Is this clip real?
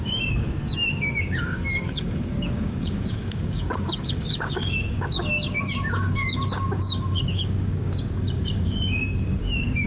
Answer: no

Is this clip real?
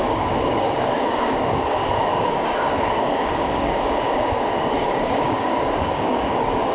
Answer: no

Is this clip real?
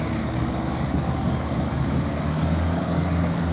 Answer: no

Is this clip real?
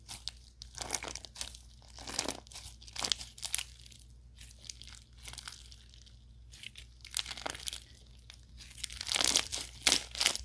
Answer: yes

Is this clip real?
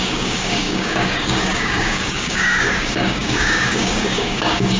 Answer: no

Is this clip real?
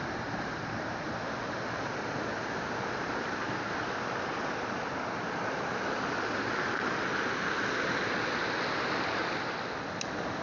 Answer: yes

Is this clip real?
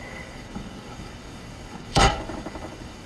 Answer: no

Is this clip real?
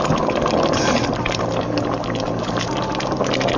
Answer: yes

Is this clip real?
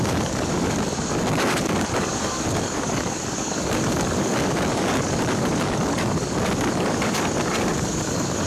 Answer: no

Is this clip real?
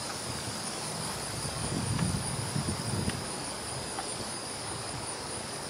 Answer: no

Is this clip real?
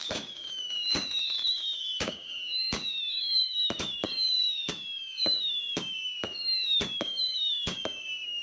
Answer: no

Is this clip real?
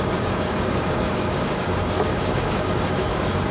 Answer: no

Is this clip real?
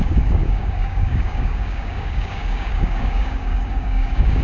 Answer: no